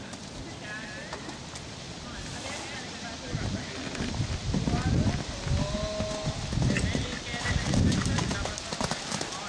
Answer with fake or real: real